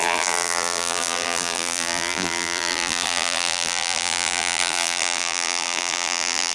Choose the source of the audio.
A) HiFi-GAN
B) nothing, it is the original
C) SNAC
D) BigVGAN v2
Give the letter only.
D